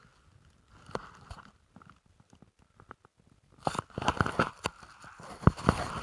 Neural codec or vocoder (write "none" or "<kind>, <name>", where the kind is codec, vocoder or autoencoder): none